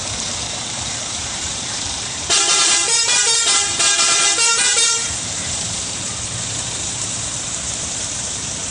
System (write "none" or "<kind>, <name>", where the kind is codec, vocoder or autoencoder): vocoder, BigVGAN v2